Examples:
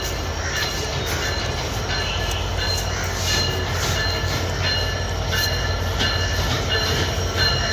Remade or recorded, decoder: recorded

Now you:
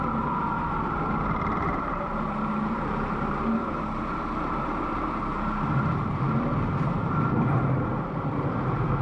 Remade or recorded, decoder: remade, vocoder, BigVGAN v2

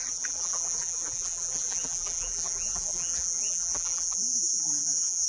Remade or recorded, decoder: remade, vocoder, BigVGAN v2